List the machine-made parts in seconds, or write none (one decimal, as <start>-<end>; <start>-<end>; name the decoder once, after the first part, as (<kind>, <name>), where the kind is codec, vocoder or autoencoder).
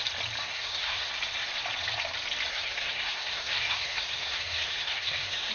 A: 0.4-1.1 (codec, SNAC); 2.5-5.5